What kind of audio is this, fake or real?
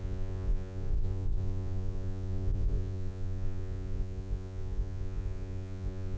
fake